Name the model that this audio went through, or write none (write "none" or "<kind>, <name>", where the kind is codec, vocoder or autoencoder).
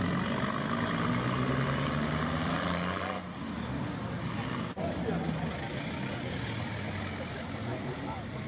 none